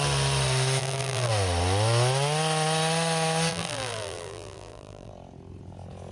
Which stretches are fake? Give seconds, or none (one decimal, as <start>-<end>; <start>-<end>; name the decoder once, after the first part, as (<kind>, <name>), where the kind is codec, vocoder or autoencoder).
0.8-1.3 (vocoder, BigVGAN v2); 3.5-5.1